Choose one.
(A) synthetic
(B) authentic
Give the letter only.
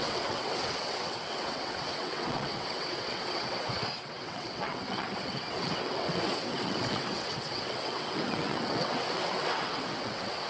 A